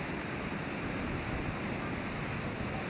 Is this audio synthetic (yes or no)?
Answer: no